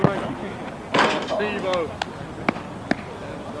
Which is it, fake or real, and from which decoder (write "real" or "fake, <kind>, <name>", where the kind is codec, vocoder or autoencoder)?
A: real